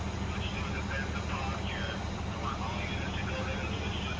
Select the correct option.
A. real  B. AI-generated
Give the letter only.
A